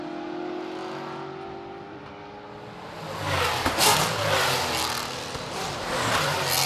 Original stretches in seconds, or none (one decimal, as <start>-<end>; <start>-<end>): 0.0-6.7